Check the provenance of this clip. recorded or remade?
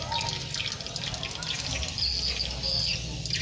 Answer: recorded